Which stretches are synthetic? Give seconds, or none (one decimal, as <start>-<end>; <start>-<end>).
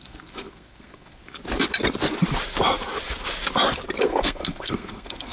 0.0-1.2; 4.0-5.3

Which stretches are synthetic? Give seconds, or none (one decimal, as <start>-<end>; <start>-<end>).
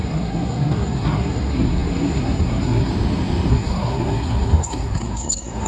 0.0-2.9; 3.5-5.7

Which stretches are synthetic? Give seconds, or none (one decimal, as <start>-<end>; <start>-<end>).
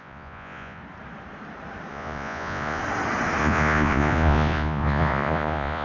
0.0-0.8; 1.9-2.8; 3.4-5.8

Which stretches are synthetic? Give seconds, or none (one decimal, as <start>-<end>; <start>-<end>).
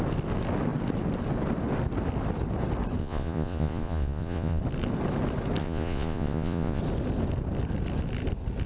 3.0-4.6; 5.6-6.8